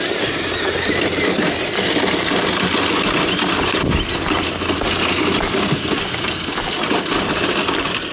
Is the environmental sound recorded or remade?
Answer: recorded